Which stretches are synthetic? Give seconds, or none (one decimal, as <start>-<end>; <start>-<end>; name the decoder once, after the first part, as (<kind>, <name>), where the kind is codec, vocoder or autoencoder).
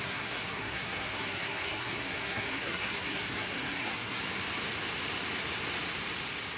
0.0-4.2 (codec, SNAC)